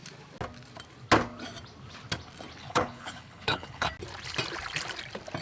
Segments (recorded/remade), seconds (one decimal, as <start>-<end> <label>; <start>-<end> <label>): 0.0-2.6 recorded; 2.6-3.9 remade; 3.9-5.4 recorded